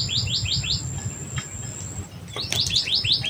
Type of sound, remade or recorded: recorded